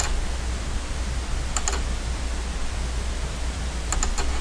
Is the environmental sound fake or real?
real